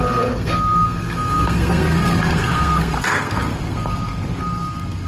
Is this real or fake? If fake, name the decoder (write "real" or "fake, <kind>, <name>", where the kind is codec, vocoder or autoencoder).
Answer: fake, codec, SNAC